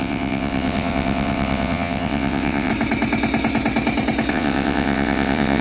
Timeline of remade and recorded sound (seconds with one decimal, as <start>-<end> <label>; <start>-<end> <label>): 0.0-2.7 remade; 2.7-4.3 recorded; 4.3-5.6 remade